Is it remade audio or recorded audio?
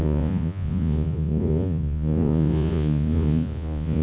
remade